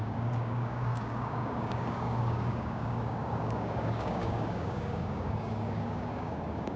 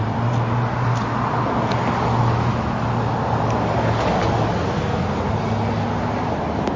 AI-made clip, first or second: first